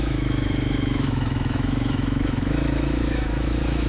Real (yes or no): no